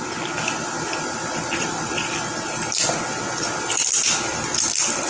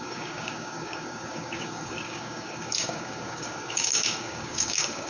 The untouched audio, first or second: first